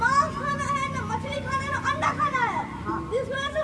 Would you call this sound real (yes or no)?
yes